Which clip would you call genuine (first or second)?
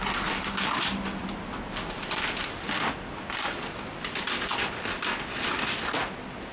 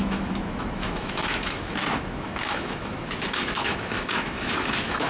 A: first